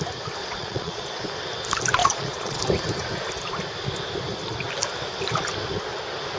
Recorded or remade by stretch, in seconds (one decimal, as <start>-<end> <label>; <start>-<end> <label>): 0.0-0.4 recorded; 0.4-1.2 remade; 1.2-2.0 recorded; 2.0-2.6 remade; 2.6-6.4 recorded